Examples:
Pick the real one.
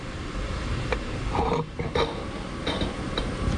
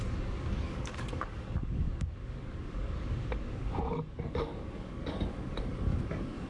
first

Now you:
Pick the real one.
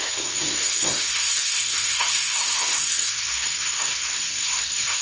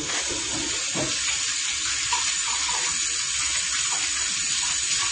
second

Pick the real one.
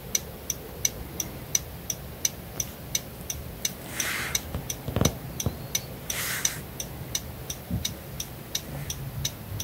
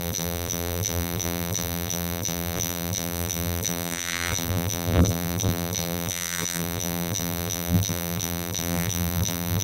first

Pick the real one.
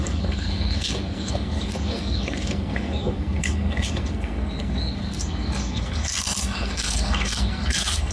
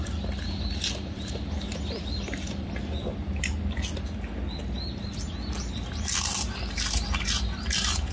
second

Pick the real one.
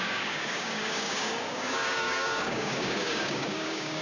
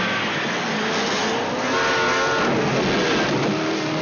second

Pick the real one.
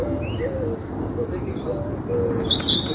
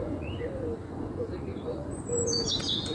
first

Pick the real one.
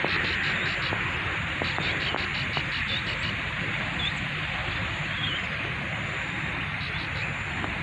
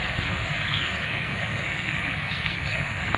first